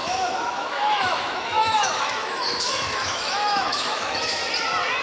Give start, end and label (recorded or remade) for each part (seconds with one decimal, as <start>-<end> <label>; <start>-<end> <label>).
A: 0.0-4.4 remade; 4.4-5.0 recorded